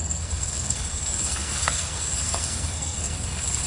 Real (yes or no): no